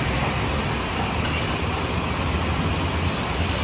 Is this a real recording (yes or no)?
yes